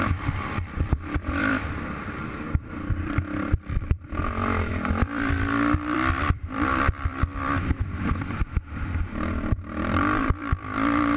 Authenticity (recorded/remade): remade